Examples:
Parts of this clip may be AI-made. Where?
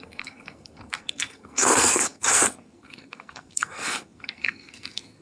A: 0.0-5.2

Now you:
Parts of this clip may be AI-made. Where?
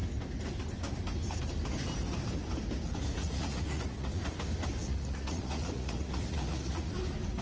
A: 3.2-4.2; 4.8-6.9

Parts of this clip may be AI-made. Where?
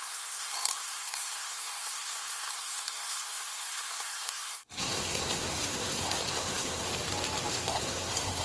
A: 0.0-6.9; 7.5-8.4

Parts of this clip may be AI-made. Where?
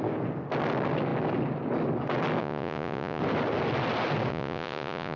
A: 2.4-3.2; 4.3-5.2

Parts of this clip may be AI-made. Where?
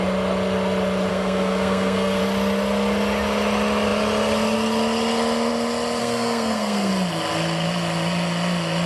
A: 1.1-2.2; 6.0-6.9